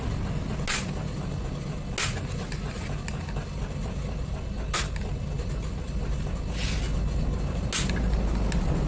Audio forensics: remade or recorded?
recorded